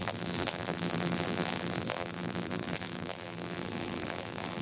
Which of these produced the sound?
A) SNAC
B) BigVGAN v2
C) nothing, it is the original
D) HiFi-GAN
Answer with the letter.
B